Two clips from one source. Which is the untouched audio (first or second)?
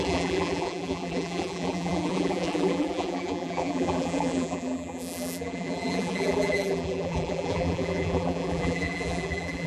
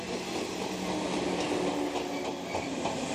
second